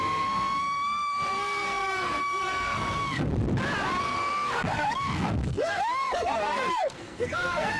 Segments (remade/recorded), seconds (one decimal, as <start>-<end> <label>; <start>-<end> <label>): 0.0-3.3 remade; 3.3-4.0 recorded; 4.0-7.8 remade